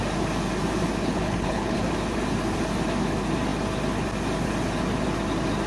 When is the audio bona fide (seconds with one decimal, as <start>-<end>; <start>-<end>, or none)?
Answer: 0.0-1.0; 1.8-5.7